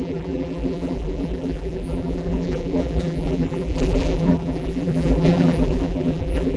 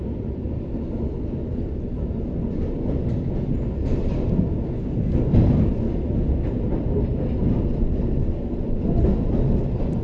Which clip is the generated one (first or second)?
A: first